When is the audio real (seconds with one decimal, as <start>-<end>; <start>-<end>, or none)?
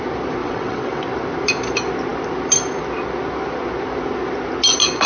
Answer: 0.0-0.4; 1.0-5.1